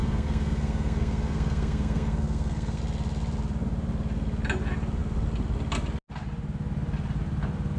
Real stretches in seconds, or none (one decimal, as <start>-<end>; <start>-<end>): 2.8-7.8